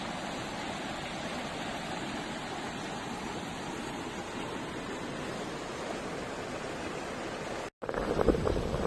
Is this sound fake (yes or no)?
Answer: no